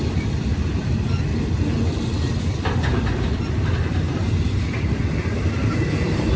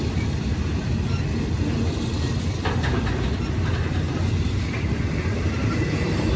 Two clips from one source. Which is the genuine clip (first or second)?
second